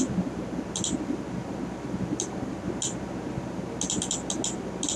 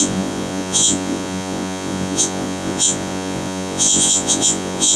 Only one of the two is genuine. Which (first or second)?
first